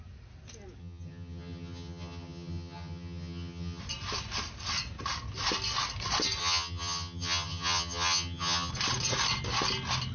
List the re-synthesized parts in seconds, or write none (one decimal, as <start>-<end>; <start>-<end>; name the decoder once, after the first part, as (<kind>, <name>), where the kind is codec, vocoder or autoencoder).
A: 0.8-3.8 (vocoder, HiFi-GAN); 6.4-8.7